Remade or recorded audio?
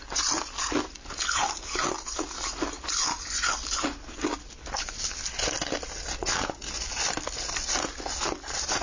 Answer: recorded